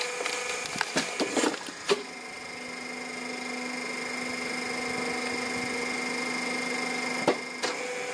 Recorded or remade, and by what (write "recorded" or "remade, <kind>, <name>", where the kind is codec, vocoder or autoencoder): recorded